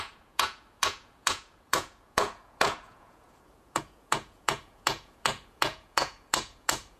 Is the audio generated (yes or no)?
yes